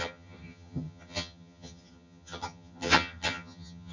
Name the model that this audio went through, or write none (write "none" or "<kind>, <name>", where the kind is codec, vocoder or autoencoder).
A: vocoder, HiFi-GAN